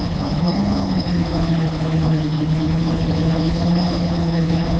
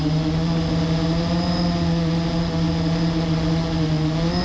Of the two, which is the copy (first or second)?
first